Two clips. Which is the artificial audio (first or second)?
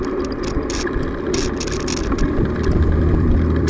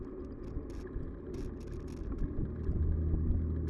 first